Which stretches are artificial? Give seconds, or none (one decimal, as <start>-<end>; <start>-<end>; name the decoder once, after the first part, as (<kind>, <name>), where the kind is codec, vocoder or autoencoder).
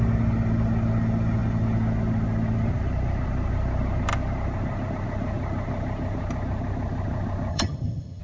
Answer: 7.5-8.2 (vocoder, HiFi-GAN)